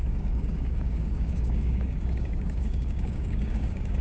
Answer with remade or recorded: remade